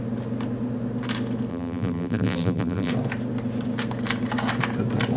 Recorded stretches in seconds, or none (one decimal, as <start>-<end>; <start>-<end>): 0.0-1.5; 2.9-5.2